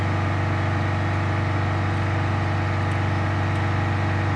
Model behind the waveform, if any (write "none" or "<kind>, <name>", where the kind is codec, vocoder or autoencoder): none